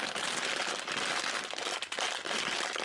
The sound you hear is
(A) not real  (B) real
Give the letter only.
B